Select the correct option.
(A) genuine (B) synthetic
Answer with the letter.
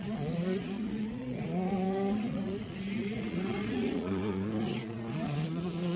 B